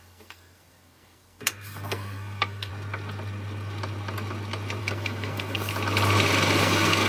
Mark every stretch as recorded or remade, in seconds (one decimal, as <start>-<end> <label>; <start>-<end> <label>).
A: 0.0-2.7 remade; 2.7-4.8 recorded; 4.8-5.7 remade; 5.7-6.6 recorded; 6.6-7.1 remade